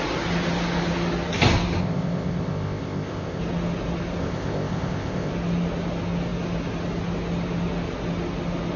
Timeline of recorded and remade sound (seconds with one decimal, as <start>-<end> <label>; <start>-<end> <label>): 0.0-1.8 recorded; 1.8-3.4 remade; 3.4-4.2 recorded; 4.2-5.3 remade; 5.3-8.8 recorded